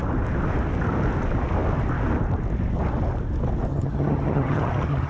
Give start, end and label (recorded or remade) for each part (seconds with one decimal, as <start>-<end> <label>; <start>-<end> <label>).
0.0-3.7 recorded; 3.7-5.1 remade